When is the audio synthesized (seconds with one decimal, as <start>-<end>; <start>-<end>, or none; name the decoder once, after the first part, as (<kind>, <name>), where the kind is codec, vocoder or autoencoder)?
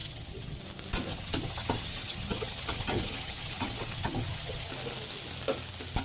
0.0-0.6 (vocoder, HiFi-GAN); 1.1-4.7